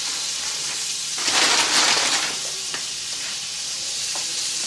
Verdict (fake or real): real